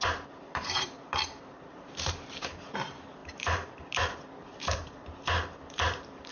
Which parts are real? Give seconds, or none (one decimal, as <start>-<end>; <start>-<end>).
none